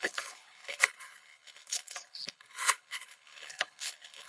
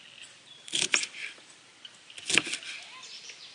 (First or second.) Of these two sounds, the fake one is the first